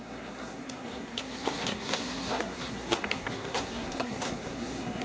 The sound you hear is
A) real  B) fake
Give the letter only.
B